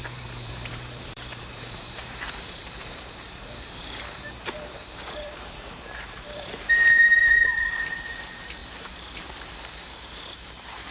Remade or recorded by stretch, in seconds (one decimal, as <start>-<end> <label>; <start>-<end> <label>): 0.0-10.9 remade